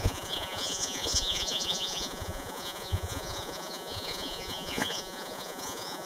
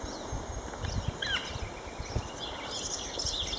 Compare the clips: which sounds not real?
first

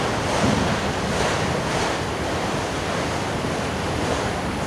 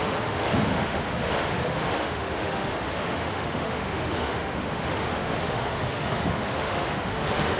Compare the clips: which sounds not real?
second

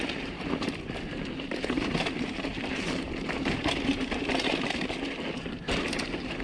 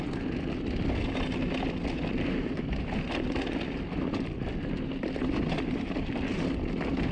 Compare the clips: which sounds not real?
first